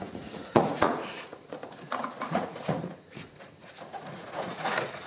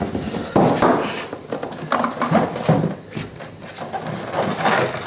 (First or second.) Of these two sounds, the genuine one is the second